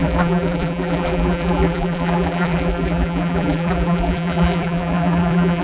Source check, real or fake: fake